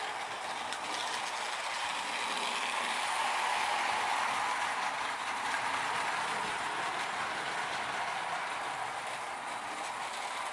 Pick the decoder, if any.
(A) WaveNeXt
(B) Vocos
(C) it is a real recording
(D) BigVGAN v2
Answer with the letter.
D